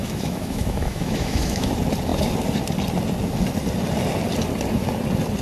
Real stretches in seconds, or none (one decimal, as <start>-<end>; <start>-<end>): 1.7-5.4